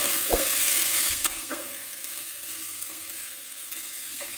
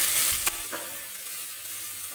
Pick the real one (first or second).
second